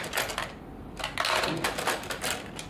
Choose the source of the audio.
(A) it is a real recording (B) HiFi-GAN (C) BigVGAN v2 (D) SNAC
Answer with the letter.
C